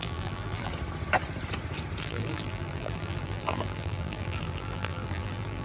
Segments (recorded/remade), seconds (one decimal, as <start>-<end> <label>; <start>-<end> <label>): 0.0-0.7 remade; 0.7-2.0 recorded; 2.0-5.6 remade